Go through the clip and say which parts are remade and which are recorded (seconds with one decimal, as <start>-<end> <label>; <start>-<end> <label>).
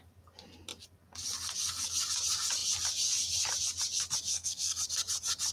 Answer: 0.0-4.3 recorded; 4.3-4.8 remade; 4.8-5.5 recorded